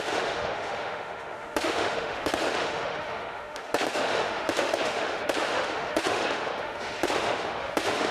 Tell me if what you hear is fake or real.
fake